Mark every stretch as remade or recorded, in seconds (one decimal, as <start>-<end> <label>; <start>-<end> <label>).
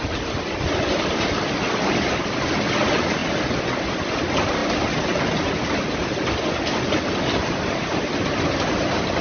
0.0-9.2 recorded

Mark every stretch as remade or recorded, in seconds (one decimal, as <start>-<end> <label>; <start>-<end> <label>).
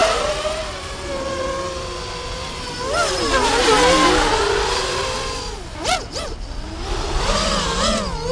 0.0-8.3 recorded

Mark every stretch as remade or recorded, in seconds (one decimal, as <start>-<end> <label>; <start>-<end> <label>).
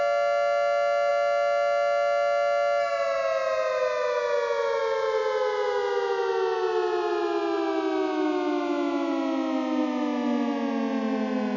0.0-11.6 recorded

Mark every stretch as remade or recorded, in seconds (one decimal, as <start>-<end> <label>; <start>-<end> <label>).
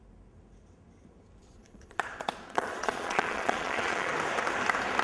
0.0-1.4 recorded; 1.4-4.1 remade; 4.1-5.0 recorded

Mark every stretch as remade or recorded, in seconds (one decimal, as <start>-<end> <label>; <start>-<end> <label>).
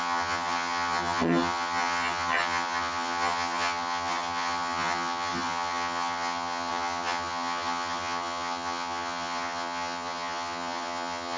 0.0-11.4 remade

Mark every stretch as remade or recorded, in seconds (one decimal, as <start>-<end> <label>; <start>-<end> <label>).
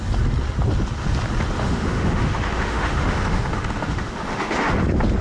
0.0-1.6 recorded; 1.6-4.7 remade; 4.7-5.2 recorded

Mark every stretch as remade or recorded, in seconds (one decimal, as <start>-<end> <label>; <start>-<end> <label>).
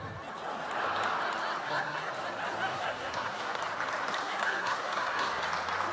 0.0-1.6 recorded; 1.6-2.1 remade; 2.1-2.7 recorded; 2.7-3.6 remade; 3.6-4.2 recorded; 4.2-5.4 remade; 5.4-5.9 recorded